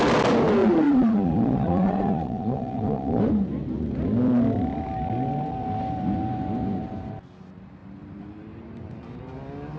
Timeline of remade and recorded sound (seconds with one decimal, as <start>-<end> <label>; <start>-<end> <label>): 0.0-0.6 recorded; 0.6-3.2 remade; 3.2-9.8 recorded